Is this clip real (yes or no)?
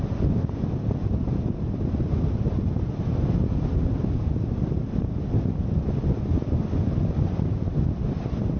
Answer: yes